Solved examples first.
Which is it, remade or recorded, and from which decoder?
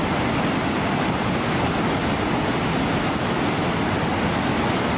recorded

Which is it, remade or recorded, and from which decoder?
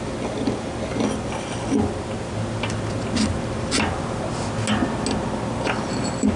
recorded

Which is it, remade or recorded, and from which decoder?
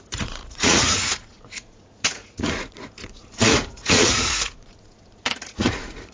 remade, vocoder, Vocos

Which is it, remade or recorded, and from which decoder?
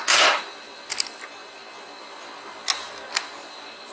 recorded